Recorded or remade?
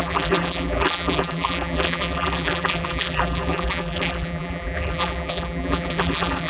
remade